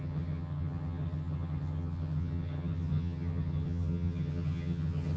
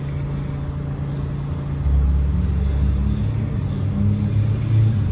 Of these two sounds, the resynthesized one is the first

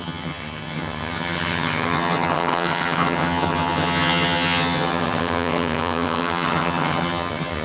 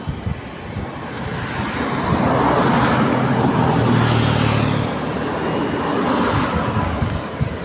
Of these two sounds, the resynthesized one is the first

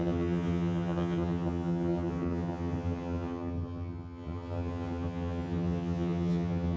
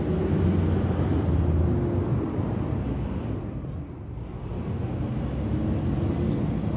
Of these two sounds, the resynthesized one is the first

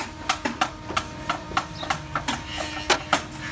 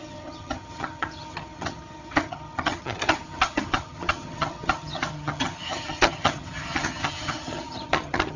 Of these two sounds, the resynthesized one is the second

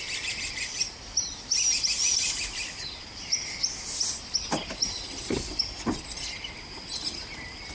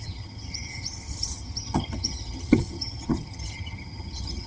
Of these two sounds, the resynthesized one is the second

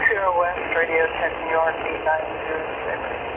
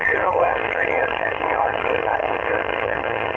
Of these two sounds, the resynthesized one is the second